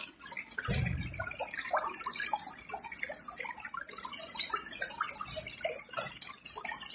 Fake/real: real